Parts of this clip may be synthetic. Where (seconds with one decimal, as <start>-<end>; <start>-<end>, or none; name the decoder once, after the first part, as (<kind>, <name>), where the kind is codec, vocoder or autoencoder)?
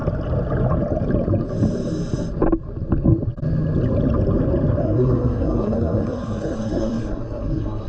4.8-7.9 (codec, SNAC)